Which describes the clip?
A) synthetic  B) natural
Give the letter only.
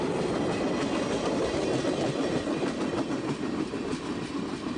A